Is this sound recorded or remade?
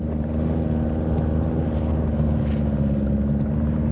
recorded